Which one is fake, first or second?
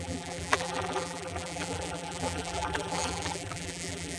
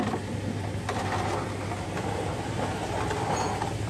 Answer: first